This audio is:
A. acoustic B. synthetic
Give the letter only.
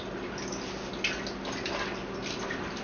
A